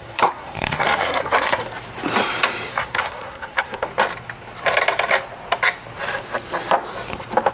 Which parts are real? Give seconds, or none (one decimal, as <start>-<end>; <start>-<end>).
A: 1.6-2.7; 3.9-7.5